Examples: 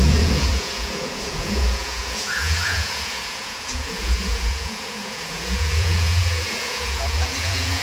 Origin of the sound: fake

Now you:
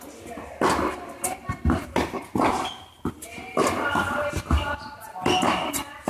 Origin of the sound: real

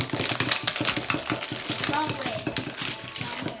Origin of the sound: real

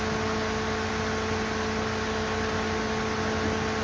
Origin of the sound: real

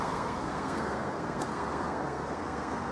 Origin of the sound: fake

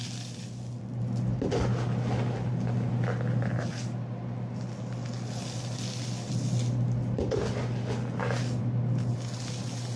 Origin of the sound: real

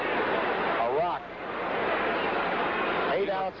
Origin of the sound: real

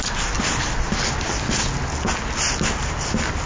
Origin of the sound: real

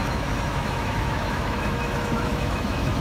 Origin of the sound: fake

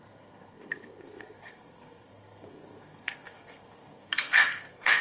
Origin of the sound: fake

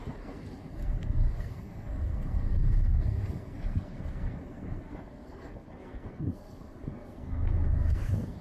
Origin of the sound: fake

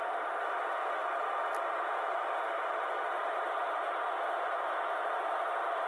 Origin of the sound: real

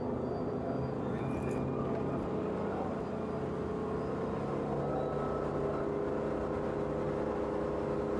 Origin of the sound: real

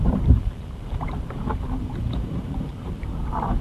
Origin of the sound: fake